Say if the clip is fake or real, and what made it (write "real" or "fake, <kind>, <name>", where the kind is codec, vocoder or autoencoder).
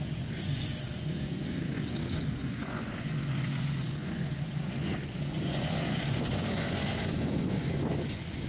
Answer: fake, vocoder, Vocos